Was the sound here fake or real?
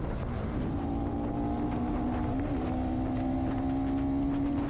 real